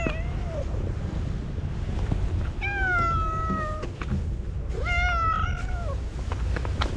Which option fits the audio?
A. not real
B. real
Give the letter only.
B